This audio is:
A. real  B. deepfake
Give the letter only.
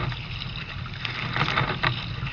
A